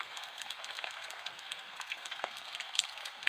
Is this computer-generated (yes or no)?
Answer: yes